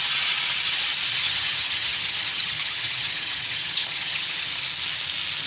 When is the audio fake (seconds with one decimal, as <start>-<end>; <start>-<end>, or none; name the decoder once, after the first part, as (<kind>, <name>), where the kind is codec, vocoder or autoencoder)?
1.2-4.5 (vocoder, HiFi-GAN)